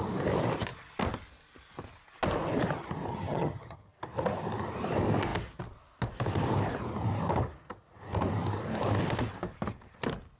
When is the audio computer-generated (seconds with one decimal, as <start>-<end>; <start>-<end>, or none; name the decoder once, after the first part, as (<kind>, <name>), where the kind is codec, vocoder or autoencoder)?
3.1-3.9 (vocoder, HiFi-GAN)